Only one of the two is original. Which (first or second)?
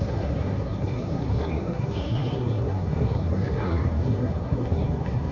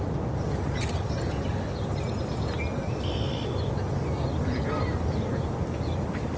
second